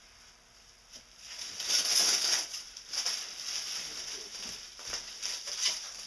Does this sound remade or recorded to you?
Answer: recorded